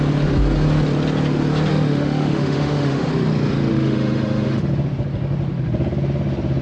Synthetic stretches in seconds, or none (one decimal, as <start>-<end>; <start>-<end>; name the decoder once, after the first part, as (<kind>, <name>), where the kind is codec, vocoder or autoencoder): 1.7-3.1 (autoencoder, DAC-VAE); 3.7-4.7

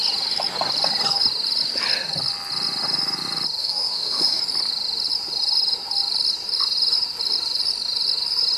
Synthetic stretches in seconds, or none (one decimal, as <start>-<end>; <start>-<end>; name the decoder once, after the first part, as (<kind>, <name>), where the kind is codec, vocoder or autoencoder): 3.6-4.4 (autoencoder, DAC-VAE)